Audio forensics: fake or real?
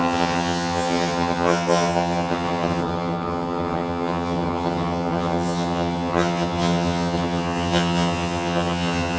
fake